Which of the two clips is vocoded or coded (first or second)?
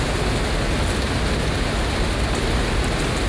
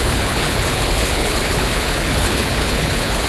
second